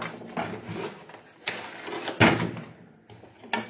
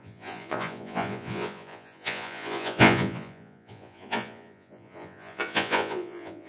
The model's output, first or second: second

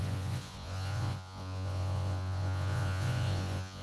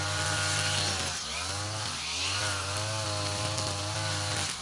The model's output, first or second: first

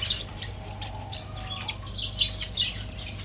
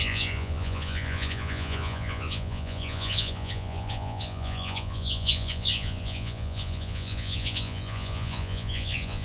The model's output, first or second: second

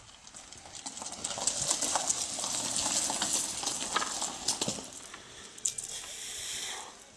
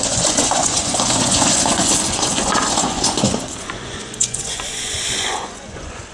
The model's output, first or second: second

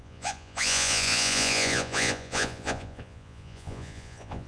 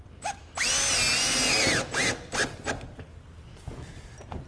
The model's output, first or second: first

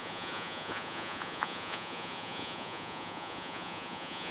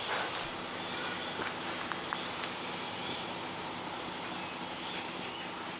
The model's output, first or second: first